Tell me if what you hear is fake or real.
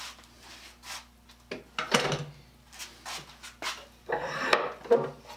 real